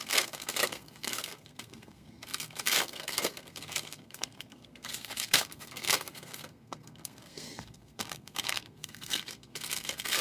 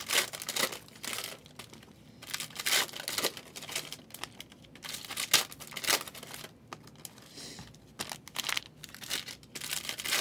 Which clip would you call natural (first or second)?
second